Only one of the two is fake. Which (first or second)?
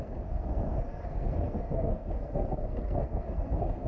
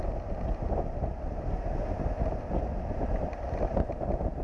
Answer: first